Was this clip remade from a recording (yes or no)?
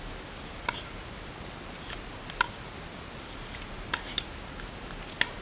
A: no